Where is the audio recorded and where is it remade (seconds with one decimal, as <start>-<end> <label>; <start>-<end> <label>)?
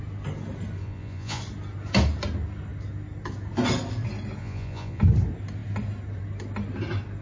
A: 0.0-0.8 recorded; 0.8-1.4 remade; 1.4-4.4 recorded; 4.4-5.0 remade; 5.0-7.2 recorded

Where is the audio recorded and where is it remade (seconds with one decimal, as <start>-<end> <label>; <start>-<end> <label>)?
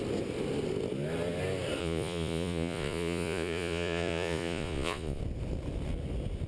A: 0.0-1.8 recorded; 1.8-5.2 remade; 5.2-6.5 recorded